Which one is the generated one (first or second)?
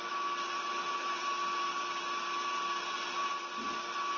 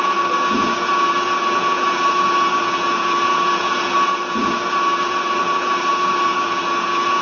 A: second